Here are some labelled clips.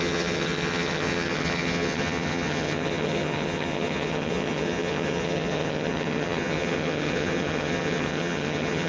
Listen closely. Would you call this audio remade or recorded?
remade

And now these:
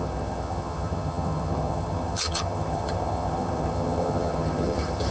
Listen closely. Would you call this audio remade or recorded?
remade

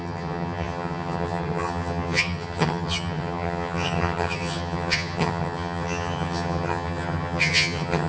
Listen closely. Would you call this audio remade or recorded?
remade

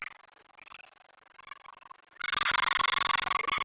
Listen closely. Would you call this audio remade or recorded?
recorded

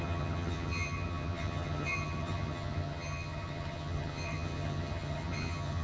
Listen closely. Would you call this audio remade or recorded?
remade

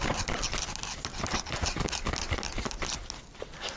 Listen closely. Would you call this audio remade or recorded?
recorded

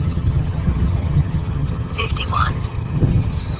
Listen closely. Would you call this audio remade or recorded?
remade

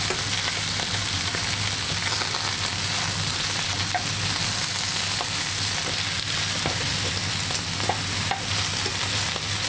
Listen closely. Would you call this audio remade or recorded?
recorded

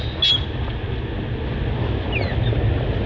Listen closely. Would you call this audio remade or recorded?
recorded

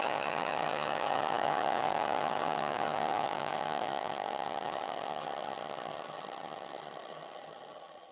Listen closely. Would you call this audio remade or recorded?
remade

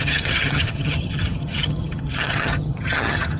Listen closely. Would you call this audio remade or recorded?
remade